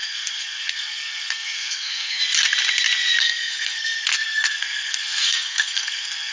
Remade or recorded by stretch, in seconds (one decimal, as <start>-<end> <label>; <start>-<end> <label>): 0.0-2.2 remade; 2.2-3.2 recorded; 3.2-6.3 remade